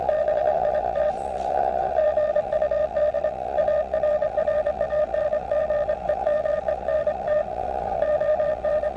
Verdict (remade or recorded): remade